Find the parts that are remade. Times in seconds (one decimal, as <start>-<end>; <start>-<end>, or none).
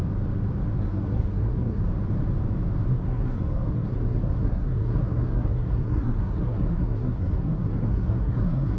0.8-1.8; 2.9-8.8